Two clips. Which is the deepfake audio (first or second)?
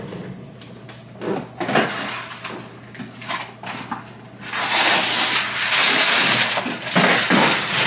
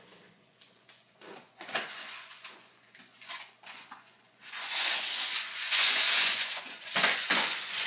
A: second